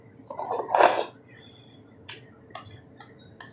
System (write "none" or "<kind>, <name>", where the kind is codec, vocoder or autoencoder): none